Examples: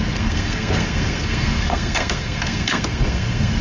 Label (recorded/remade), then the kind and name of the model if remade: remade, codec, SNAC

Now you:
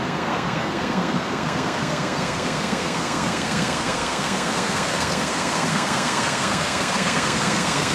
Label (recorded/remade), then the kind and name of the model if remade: remade, codec, SNAC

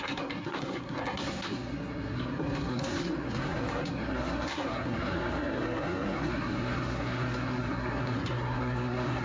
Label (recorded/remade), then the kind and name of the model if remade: remade, codec, SNAC